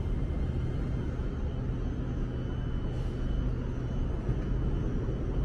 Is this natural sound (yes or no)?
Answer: yes